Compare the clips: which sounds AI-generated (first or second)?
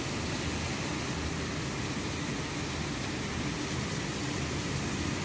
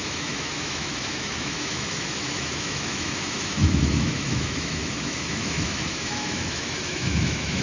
second